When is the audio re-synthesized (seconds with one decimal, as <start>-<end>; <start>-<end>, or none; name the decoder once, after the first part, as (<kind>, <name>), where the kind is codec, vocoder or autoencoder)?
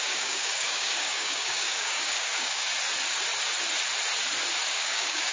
0.0-2.7 (codec, DAC); 4.7-5.3